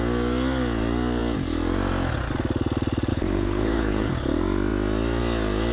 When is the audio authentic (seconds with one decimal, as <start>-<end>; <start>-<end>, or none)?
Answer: 0.0-3.1; 4.1-5.7